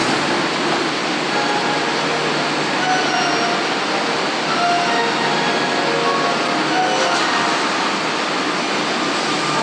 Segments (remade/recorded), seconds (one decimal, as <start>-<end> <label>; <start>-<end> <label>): 0.0-9.6 recorded